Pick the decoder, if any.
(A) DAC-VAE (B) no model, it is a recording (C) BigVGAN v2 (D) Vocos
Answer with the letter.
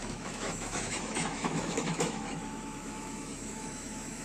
A